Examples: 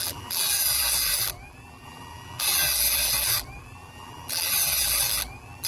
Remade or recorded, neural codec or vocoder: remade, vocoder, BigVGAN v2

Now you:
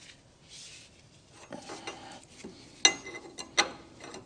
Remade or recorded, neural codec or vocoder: recorded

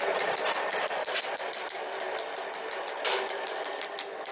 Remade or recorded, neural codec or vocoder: recorded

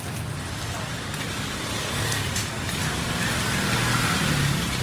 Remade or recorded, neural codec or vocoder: recorded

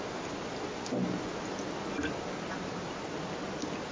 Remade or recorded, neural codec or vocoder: recorded